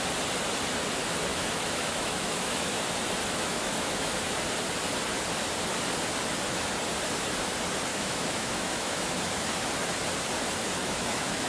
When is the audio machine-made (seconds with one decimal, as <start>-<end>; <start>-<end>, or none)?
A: 1.3-2.8; 3.2-4.1; 7.9-9.7; 10.8-11.5